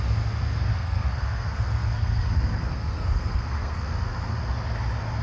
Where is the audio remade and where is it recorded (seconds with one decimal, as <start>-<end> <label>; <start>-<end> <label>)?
0.0-0.7 recorded; 0.7-3.8 remade; 3.8-5.2 recorded